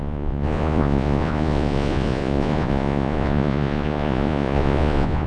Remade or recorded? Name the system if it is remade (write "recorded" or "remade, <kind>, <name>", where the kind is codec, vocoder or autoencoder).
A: remade, vocoder, Vocos